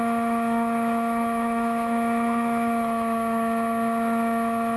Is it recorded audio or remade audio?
remade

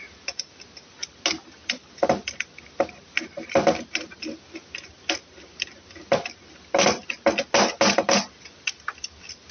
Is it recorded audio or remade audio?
recorded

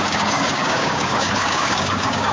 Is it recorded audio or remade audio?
remade